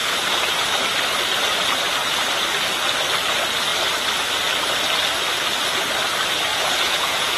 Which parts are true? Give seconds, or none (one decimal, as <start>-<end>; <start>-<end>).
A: 0.5-6.5

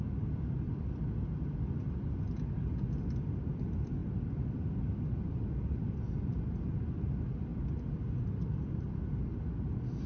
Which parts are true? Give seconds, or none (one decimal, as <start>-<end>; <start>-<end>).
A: 0.0-10.1

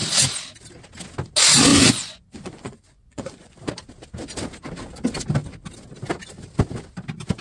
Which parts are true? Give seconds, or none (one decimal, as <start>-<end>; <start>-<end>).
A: 0.0-1.7; 3.7-7.4

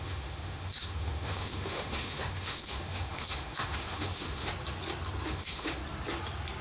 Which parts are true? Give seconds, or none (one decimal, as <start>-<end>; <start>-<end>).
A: 4.5-5.3; 5.8-6.6

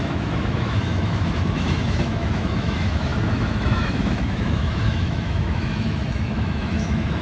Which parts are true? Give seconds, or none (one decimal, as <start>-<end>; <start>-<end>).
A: none